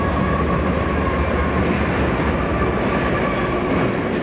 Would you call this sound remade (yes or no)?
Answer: no